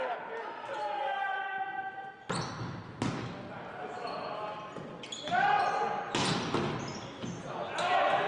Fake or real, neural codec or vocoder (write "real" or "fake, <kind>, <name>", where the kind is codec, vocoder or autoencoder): real